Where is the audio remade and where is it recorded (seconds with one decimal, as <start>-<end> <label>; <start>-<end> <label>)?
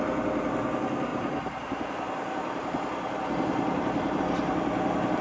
0.0-1.1 recorded; 1.1-4.2 remade; 4.2-5.2 recorded